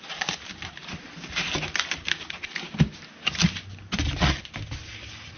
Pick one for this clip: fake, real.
real